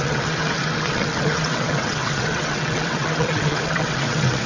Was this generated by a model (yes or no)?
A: yes